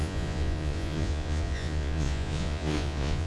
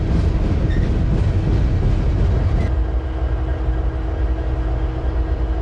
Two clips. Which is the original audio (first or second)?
second